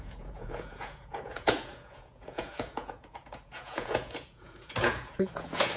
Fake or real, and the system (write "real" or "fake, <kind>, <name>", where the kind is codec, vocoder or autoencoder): fake, vocoder, Vocos